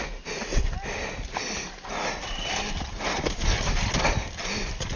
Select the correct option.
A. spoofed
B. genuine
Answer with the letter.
B